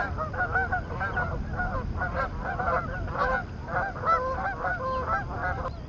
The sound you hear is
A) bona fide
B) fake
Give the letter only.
A